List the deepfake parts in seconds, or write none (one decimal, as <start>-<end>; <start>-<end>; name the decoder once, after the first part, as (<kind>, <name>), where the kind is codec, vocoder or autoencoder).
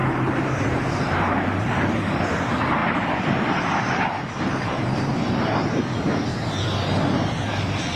0.0-1.7 (vocoder, BigVGAN v2); 2.8-5.3